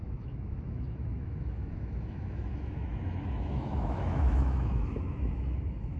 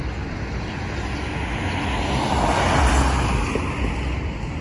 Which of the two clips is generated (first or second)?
first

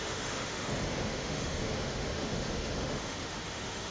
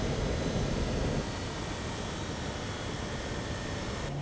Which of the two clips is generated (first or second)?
first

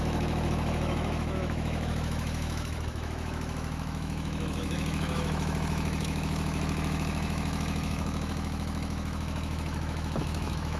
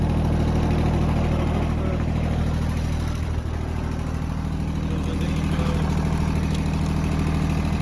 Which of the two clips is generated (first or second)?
first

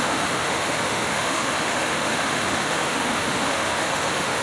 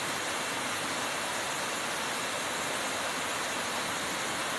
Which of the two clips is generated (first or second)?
first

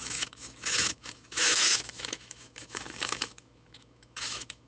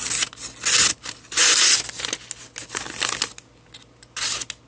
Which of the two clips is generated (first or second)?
first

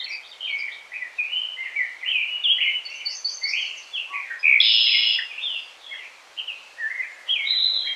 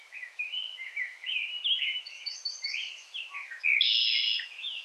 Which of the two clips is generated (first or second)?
second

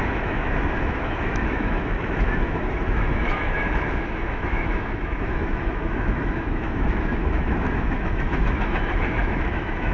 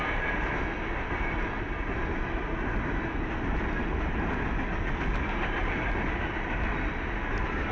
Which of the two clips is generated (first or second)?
first